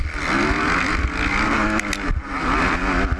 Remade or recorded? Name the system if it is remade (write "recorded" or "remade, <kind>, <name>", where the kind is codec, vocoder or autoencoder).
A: recorded